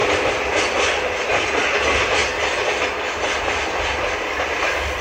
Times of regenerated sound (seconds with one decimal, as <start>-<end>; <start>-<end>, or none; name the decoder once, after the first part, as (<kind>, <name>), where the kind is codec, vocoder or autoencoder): none